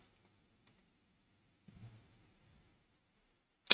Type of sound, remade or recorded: recorded